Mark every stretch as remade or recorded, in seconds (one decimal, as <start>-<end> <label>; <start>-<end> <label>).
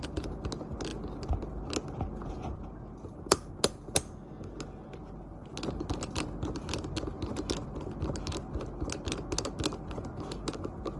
0.0-11.0 recorded